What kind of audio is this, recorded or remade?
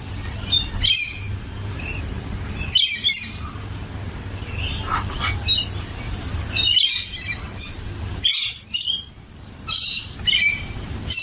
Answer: recorded